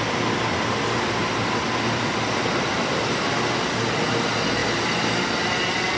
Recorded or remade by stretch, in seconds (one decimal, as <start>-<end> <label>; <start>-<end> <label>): 0.0-1.2 recorded; 1.2-3.1 remade; 3.1-4.6 recorded; 4.6-5.3 remade; 5.3-6.0 recorded